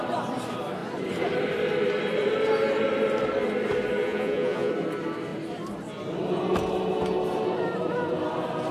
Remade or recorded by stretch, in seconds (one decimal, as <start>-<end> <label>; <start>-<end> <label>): 0.0-4.0 recorded; 4.0-4.7 remade; 4.7-8.7 recorded